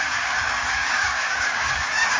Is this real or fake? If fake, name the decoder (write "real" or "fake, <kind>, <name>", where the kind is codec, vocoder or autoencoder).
fake, codec, DAC